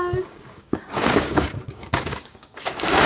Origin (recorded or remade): remade